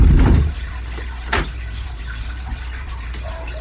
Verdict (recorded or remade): remade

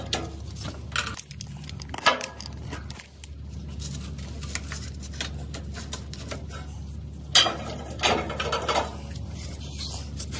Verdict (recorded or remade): recorded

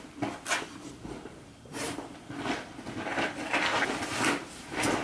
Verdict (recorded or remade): recorded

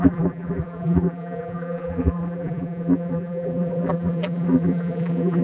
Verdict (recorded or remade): remade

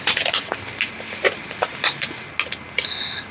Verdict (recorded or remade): recorded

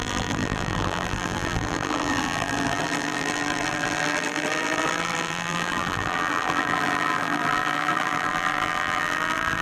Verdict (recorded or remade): remade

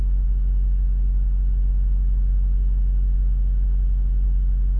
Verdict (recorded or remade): recorded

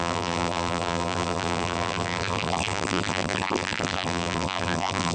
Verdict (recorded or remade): remade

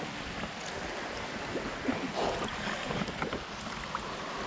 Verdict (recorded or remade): recorded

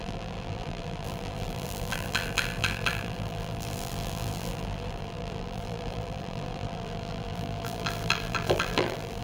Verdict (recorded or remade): remade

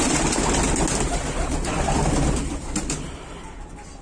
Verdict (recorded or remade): recorded